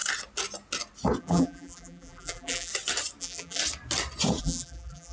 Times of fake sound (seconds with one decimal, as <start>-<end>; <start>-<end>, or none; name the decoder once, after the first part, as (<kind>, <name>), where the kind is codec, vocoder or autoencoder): 1.2-2.7 (vocoder, BigVGAN v2); 3.2-3.6; 4.4-5.1